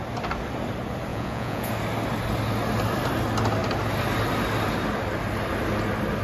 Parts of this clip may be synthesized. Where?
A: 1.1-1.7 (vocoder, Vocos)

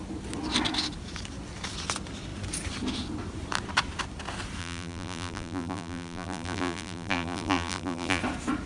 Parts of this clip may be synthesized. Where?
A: 4.6-8.2 (vocoder, BigVGAN v2)